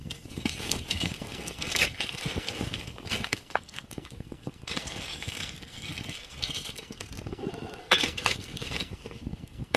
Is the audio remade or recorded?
remade